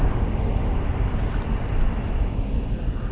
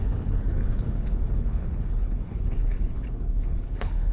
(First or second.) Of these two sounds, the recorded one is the first